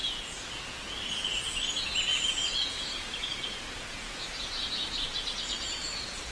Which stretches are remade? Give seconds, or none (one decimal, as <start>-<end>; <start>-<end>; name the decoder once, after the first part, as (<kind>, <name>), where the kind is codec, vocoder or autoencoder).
0.0-1.0 (vocoder, Vocos); 2.1-6.3